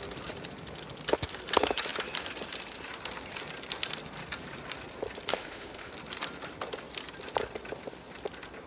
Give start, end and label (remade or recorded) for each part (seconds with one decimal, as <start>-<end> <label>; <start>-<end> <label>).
0.0-5.3 recorded; 5.3-5.9 remade; 5.9-8.7 recorded